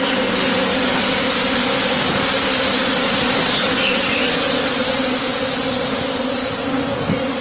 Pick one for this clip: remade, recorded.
recorded